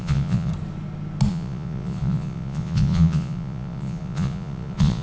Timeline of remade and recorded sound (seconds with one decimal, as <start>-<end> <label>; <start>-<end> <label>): 0.0-0.5 remade; 0.5-1.3 recorded; 1.3-5.0 remade